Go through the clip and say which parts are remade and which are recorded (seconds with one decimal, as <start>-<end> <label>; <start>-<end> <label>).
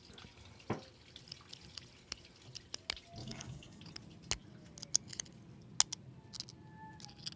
0.0-3.2 recorded; 3.2-3.8 remade; 3.8-7.4 recorded